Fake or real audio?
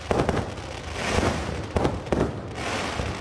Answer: real